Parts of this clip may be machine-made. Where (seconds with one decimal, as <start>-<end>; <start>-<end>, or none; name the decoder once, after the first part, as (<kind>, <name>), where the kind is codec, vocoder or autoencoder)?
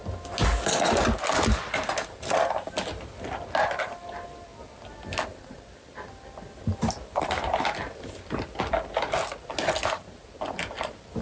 none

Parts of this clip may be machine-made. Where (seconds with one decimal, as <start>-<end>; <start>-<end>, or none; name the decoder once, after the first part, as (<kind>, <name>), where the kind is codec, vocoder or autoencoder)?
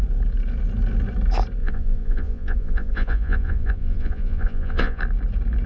1.6-5.0 (vocoder, Vocos)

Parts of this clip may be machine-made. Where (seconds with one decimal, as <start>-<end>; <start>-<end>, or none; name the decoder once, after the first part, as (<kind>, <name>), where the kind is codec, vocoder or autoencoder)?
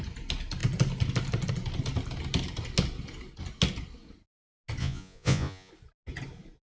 4.8-5.7 (vocoder, Vocos)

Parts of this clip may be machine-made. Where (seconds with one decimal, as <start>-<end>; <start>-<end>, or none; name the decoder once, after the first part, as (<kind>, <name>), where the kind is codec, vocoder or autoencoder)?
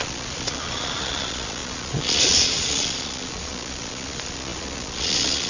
0.0-5.5 (vocoder, Vocos)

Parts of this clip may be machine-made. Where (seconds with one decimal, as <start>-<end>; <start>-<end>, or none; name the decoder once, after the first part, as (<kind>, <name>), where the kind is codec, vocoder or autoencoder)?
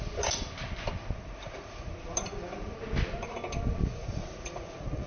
1.2-1.9 (vocoder, Vocos); 3.8-5.1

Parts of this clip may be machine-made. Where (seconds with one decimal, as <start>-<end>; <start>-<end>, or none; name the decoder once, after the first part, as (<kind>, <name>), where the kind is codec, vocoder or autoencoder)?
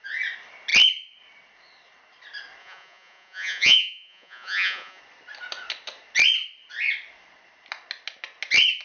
2.6-5.0 (vocoder, Vocos)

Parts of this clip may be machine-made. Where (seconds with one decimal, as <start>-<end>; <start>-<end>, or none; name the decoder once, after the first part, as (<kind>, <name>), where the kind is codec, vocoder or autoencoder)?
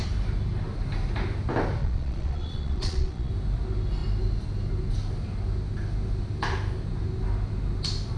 1.8-3.3 (vocoder, Vocos)